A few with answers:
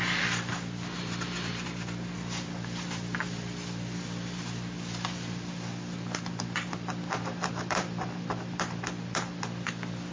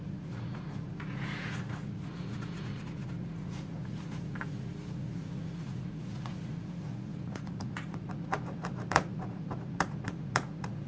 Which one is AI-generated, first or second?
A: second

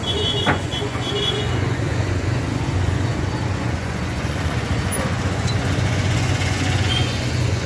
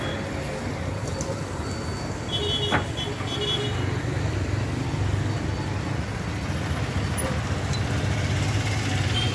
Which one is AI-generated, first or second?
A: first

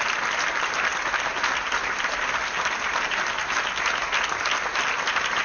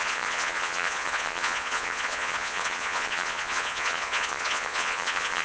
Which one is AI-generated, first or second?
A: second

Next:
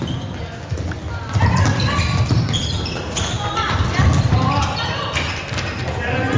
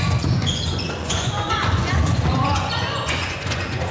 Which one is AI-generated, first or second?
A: second